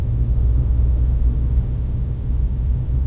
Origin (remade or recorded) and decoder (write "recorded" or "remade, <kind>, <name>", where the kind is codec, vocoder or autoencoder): remade, autoencoder, DAC-VAE